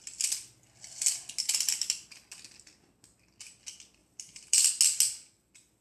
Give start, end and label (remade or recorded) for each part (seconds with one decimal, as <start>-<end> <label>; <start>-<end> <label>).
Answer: 0.0-4.0 recorded; 4.0-4.7 remade; 4.7-5.8 recorded